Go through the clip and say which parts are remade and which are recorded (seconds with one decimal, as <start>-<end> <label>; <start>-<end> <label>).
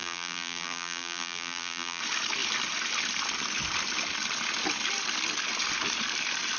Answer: 0.0-2.0 remade; 2.0-6.6 recorded